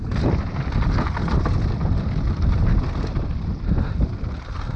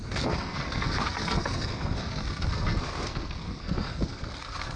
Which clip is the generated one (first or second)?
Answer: second